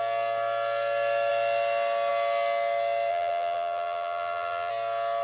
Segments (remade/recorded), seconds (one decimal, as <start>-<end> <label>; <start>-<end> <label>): 0.0-3.1 recorded; 3.1-4.7 remade; 4.7-5.2 recorded